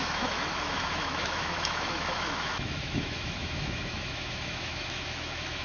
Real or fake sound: fake